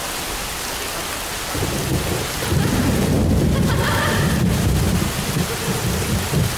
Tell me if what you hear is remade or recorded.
recorded